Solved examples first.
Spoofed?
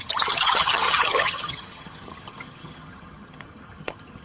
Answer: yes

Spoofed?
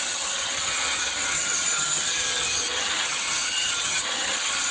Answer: yes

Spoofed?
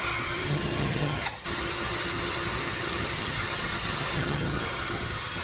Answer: yes